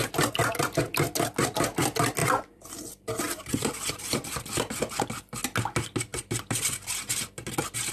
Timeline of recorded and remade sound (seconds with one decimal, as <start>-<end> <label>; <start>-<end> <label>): 0.0-2.2 recorded; 2.2-4.9 remade; 4.9-7.9 recorded